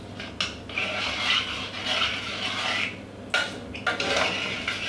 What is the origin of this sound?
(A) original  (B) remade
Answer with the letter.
A